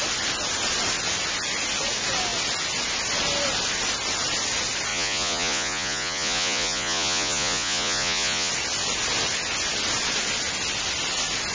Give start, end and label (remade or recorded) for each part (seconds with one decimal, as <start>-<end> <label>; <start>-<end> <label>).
0.0-4.9 recorded; 4.9-8.5 remade; 8.5-11.5 recorded